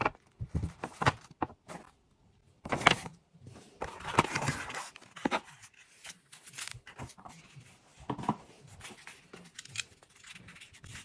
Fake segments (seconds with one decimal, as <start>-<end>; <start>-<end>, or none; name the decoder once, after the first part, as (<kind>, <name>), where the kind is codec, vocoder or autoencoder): 3.1-4.5 (vocoder, BigVGAN v2); 6.7-7.3